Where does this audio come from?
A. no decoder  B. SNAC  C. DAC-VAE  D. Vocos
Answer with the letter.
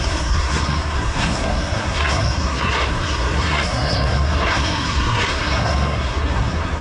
B